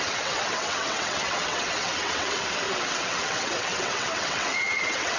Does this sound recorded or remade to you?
remade